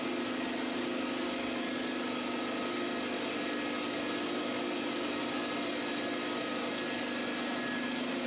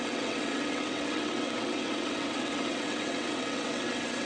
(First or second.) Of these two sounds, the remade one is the second